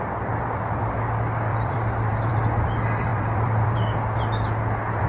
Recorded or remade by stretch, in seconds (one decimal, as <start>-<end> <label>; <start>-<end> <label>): 0.0-1.5 recorded; 1.5-2.3 remade; 2.3-3.1 recorded; 3.1-4.2 remade; 4.2-5.1 recorded